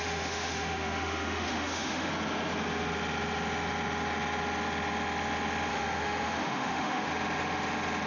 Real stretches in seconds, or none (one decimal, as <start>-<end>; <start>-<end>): 2.1-5.7; 7.1-8.1